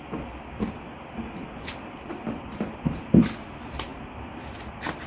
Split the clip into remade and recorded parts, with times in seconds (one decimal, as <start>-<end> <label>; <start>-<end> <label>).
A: 0.0-5.1 recorded